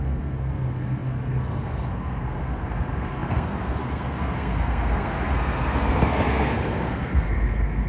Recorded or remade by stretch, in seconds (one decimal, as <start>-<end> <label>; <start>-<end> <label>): 0.0-7.9 remade